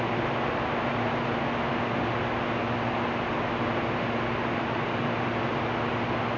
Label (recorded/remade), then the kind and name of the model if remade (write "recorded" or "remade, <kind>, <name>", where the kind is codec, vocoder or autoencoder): recorded